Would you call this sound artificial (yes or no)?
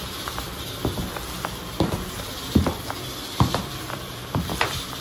yes